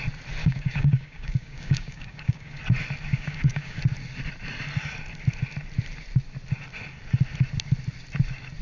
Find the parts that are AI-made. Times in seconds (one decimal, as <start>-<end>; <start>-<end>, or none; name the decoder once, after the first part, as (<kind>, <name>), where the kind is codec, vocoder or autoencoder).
0.4-2.6 (codec, DAC); 3.1-3.8